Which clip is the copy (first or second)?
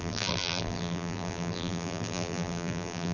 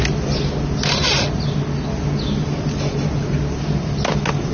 first